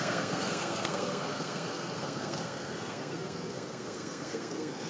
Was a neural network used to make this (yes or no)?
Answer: yes